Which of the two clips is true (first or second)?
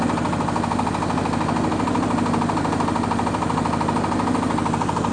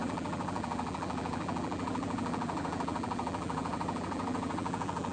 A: first